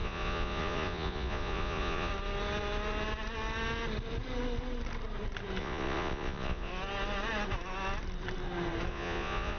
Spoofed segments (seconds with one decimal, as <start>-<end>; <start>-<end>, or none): 0.0-2.1; 5.6-6.7; 8.9-9.6

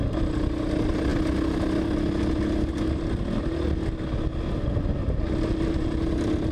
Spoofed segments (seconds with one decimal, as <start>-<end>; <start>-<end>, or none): none

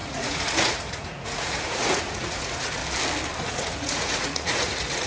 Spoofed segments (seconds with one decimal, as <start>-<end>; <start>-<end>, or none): 0.0-2.8; 3.5-5.1

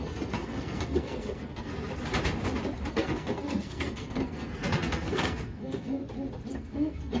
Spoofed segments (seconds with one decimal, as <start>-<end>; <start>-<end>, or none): 0.0-1.7; 2.9-6.0; 6.5-7.2